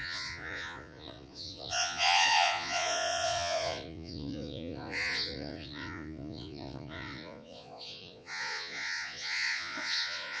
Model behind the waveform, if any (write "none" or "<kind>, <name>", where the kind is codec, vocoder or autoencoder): vocoder, Vocos